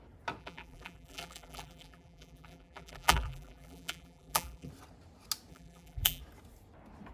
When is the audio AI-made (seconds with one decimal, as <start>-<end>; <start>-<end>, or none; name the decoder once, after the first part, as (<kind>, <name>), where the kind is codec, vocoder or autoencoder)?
0.4-4.7 (vocoder, BigVGAN v2); 5.5-6.2